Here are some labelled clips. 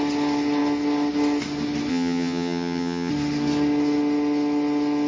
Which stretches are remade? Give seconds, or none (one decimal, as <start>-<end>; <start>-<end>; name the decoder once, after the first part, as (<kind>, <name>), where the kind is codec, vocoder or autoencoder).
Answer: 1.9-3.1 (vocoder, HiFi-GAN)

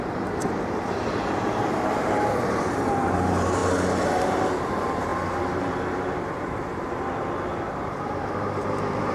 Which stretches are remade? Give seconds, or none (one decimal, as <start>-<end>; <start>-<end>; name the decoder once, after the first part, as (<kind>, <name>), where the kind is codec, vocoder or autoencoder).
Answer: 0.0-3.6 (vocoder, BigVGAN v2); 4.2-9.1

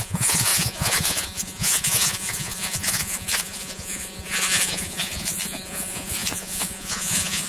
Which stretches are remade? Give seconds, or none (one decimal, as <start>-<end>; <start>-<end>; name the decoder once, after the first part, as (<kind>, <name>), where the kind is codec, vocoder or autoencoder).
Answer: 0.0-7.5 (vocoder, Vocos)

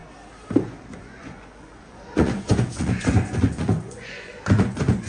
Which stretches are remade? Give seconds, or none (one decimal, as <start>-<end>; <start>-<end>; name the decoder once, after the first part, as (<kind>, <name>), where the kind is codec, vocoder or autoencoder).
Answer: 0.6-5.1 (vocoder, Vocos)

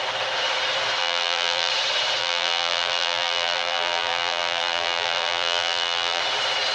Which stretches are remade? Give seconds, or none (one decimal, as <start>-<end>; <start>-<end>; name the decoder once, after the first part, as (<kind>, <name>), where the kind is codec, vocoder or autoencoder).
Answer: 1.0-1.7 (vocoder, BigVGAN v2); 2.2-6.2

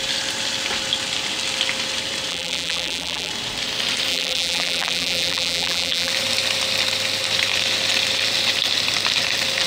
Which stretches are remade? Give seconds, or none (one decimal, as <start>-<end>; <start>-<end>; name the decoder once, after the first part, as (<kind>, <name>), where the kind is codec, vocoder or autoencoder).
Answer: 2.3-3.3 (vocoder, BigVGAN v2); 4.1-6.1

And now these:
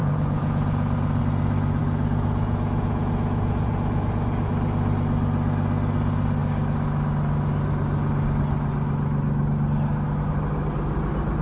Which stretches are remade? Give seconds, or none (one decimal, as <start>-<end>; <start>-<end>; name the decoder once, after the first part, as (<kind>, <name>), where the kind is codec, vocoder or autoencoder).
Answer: 0.0-1.2 (vocoder, Vocos); 1.8-4.5